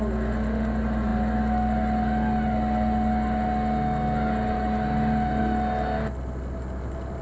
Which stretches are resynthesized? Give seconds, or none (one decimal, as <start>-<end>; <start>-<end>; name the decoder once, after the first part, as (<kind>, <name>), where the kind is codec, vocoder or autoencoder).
none